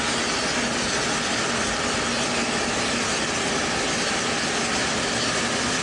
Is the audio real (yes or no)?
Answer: yes